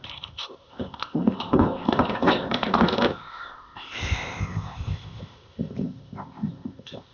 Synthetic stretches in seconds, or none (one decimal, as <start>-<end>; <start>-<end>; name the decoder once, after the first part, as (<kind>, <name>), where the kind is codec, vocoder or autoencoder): 0.0-7.1 (codec, ZipCodec)